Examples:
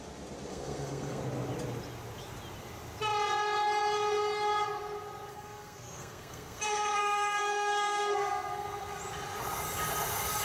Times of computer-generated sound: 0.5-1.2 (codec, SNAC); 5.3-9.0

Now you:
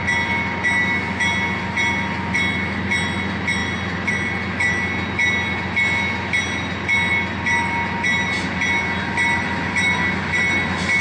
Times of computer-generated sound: none

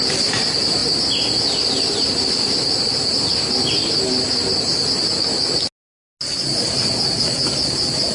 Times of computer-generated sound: none